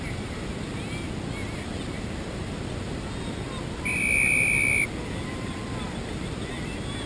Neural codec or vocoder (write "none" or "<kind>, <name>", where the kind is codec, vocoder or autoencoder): none